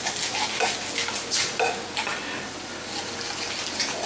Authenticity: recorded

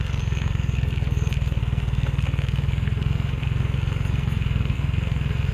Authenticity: remade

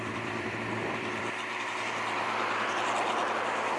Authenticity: remade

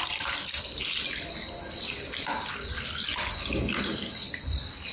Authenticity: recorded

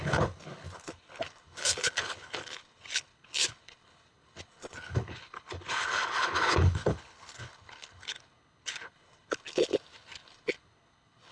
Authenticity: remade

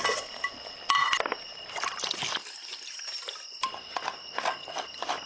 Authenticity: recorded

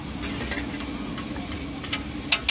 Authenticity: recorded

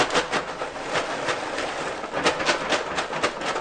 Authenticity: recorded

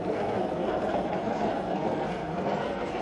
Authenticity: remade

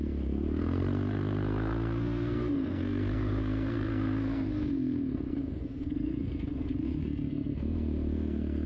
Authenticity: remade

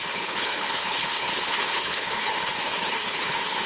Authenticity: remade